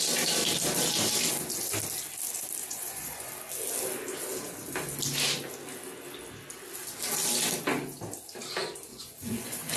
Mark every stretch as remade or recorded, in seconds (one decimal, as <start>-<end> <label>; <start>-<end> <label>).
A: 0.0-2.6 recorded; 2.6-3.3 remade; 3.3-8.9 recorded; 8.9-9.8 remade